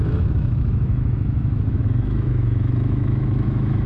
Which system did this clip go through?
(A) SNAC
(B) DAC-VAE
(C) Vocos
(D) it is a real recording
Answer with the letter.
B